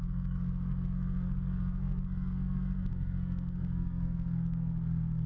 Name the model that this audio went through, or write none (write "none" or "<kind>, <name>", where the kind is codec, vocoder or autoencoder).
codec, SNAC